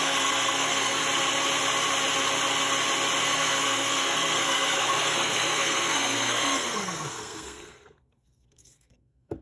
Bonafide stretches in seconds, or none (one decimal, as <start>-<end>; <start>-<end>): 1.0-3.2